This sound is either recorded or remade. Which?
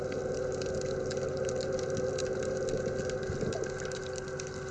recorded